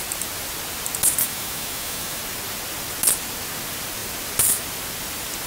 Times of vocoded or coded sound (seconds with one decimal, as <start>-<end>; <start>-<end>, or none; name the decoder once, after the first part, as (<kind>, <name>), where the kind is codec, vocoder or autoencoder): 1.2-2.2 (autoencoder, DAC-VAE)